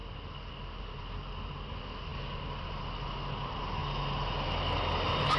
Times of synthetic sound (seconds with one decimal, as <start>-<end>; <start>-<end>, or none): none